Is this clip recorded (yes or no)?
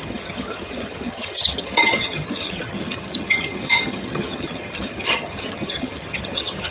no